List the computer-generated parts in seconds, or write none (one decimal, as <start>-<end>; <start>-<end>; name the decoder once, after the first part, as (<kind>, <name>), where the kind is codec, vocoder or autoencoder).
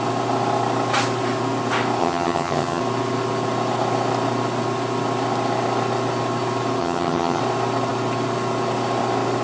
2.0-2.8 (vocoder, HiFi-GAN); 6.8-7.4